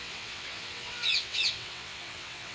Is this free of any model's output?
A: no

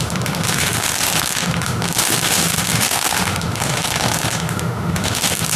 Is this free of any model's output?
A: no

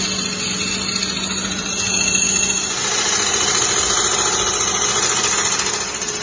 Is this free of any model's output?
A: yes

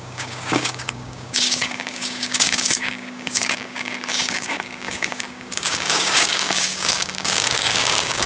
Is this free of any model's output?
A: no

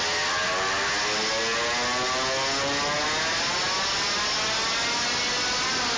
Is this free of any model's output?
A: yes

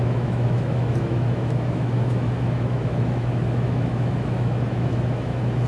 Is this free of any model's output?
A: no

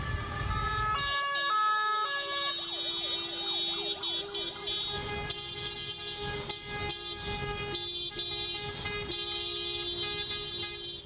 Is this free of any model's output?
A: yes